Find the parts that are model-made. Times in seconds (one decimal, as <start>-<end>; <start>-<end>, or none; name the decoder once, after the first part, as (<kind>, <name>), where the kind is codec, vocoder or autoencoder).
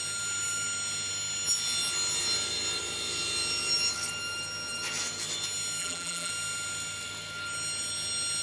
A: 5.8-6.3 (vocoder, BigVGAN v2)